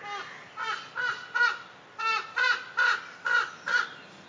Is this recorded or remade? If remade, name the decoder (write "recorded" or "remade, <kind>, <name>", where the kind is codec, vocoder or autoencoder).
recorded